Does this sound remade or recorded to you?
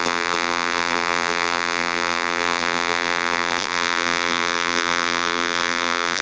remade